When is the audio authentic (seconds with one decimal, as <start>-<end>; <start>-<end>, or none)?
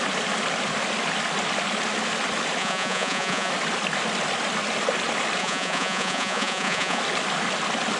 0.0-2.6; 3.5-5.4; 7.0-8.0